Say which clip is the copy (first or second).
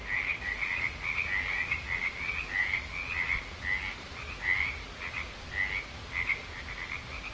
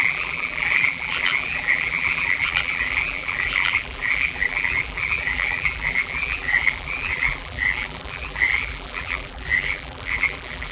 second